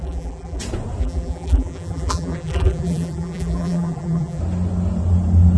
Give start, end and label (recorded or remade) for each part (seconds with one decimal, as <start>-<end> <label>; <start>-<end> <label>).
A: 0.0-0.6 remade; 0.6-1.0 recorded; 1.0-4.4 remade; 4.4-5.6 recorded